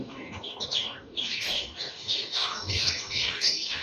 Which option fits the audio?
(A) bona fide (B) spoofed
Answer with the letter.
B